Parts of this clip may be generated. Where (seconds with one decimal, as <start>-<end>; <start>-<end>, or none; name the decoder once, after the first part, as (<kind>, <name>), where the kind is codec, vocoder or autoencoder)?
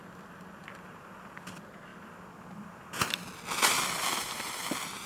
none